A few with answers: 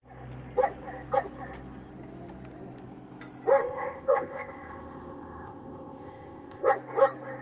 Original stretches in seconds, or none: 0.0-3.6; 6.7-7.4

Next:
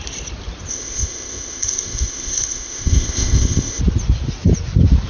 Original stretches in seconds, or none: 0.0-0.7; 3.8-5.1

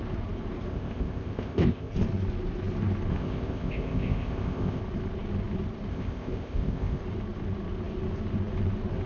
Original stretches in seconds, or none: 0.0-0.7; 1.9-3.1; 4.8-5.9; 7.0-9.1